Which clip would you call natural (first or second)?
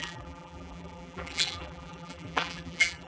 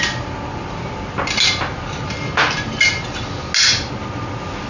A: second